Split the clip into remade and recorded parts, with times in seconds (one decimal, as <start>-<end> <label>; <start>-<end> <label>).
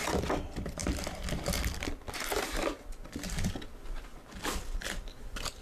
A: 0.0-5.6 recorded